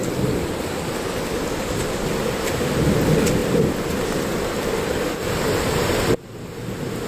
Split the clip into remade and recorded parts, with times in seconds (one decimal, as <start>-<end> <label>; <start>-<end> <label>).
0.0-7.1 recorded